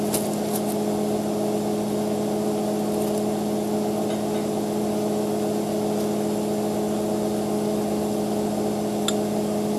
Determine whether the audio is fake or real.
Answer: real